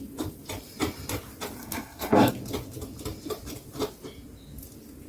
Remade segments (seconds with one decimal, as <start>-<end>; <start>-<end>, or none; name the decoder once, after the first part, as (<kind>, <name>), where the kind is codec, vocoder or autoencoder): 1.6-2.3 (codec, SNAC)